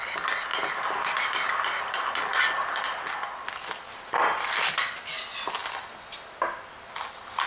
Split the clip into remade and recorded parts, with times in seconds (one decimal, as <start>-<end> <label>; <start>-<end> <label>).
0.0-7.5 recorded